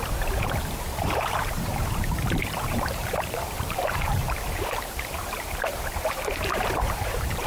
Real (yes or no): no